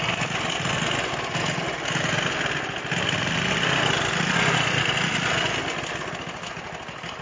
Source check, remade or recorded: recorded